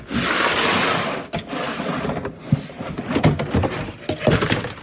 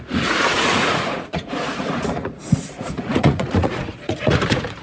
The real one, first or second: first